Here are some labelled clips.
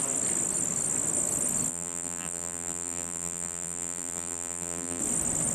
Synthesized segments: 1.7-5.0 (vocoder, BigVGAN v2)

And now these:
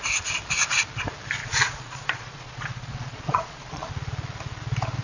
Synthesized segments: 1.4-3.9 (vocoder, Vocos)

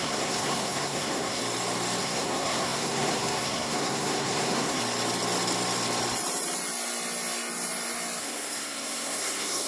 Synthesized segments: 0.0-1.4 (codec, SNAC); 2.0-4.8; 8.2-9.7

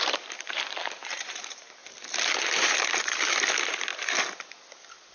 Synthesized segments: 0.0-1.8 (vocoder, BigVGAN v2); 2.4-3.9